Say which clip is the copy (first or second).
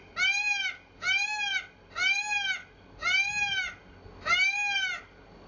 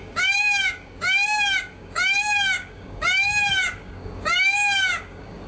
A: second